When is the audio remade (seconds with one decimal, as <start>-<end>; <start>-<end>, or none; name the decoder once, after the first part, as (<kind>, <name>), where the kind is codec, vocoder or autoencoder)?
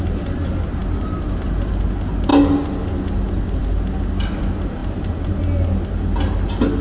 none